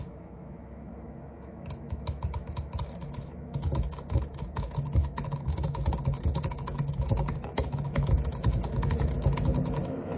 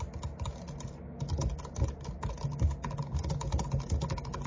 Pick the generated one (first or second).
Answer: first